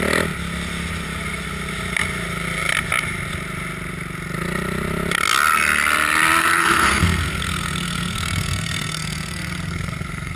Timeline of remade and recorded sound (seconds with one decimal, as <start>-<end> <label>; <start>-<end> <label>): 0.0-6.4 recorded; 6.4-10.4 remade